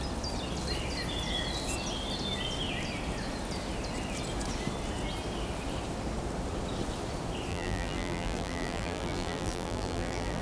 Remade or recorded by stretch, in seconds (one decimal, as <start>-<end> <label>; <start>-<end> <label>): 0.0-7.5 recorded; 7.5-10.4 remade